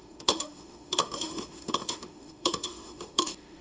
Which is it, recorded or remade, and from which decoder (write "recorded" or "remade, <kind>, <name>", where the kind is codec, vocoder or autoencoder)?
remade, autoencoder, DAC-VAE